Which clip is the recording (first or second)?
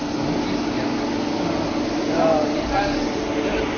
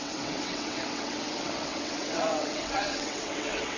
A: first